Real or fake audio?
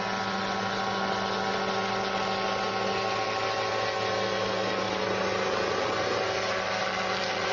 real